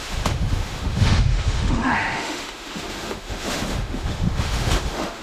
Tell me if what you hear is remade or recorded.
remade